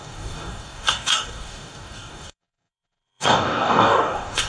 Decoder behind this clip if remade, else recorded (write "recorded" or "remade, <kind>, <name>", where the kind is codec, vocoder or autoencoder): remade, codec, DAC